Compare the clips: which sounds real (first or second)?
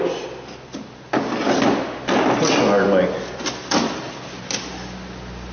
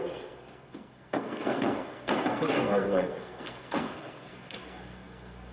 first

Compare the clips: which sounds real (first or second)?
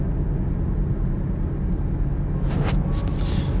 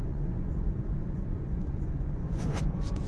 first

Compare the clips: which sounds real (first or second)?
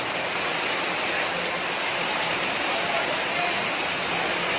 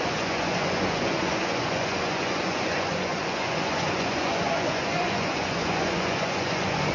first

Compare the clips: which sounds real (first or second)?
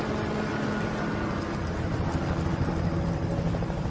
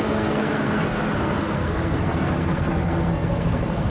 first